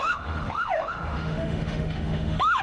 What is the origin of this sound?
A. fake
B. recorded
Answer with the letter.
A